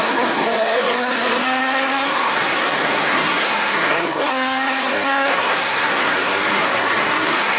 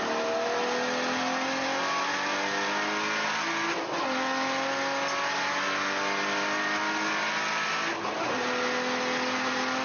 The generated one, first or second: first